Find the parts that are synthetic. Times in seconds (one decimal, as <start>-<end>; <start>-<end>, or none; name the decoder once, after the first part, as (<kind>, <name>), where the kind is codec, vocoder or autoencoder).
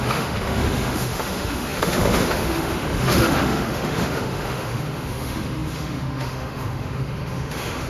0.0-7.9 (autoencoder, DAC-VAE)